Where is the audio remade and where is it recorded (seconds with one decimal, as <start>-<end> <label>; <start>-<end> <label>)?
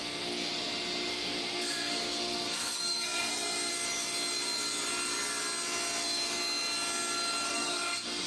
0.0-0.5 remade; 0.5-1.1 recorded; 1.1-3.7 remade; 3.7-7.5 recorded; 7.5-8.3 remade